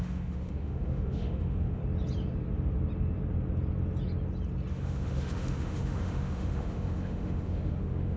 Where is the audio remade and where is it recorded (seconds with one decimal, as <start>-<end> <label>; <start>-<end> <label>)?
0.0-1.8 remade; 1.8-4.7 recorded; 4.7-8.2 remade